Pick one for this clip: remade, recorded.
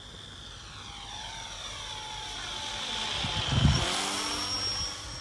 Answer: recorded